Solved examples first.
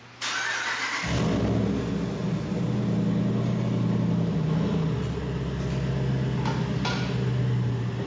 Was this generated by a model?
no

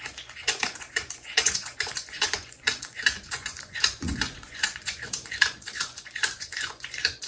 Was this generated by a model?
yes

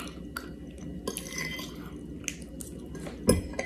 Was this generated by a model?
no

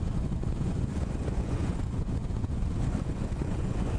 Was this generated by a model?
yes